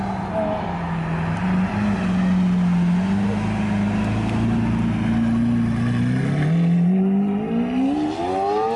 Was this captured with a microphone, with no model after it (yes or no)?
yes